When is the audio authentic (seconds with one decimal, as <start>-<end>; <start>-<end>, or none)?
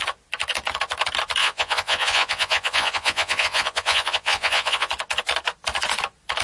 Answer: 0.0-1.4; 4.9-6.4